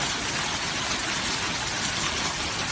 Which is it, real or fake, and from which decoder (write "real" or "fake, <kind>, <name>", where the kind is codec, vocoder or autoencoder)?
real